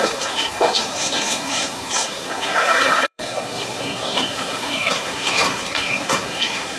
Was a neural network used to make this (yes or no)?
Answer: yes